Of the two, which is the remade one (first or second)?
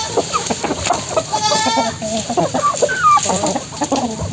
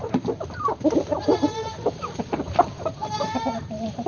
second